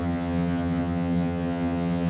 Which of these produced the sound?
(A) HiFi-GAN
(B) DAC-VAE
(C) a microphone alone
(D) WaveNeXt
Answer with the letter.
A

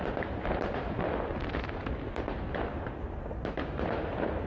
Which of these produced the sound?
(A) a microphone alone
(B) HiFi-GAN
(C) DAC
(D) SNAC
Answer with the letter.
A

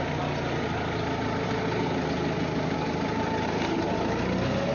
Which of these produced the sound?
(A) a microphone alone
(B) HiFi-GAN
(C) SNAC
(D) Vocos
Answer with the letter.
A